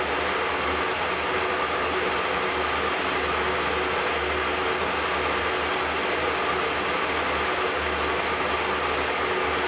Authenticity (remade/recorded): recorded